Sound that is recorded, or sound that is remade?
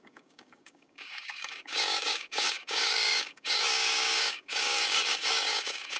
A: remade